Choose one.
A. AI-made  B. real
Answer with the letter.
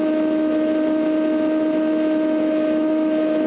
B